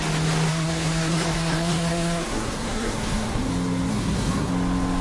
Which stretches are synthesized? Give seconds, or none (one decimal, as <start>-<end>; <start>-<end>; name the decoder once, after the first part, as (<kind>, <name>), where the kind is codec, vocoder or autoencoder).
0.5-3.5 (codec, SNAC); 3.9-4.5